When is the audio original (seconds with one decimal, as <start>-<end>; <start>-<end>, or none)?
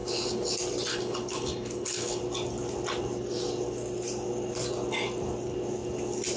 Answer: 0.5-0.9; 2.2-6.4